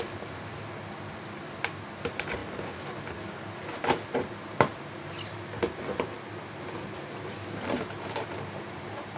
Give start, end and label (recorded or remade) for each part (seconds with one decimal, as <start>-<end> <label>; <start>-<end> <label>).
0.0-9.2 recorded